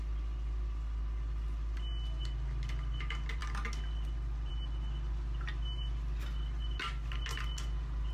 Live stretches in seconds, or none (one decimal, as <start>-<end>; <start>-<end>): 0.0-8.1